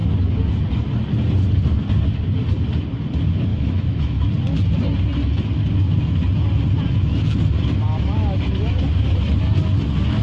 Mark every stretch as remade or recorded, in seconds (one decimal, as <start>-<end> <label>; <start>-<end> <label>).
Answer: 0.0-3.5 recorded; 3.5-4.2 remade; 4.2-10.2 recorded